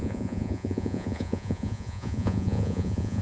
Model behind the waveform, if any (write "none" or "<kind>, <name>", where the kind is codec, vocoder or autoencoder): vocoder, Vocos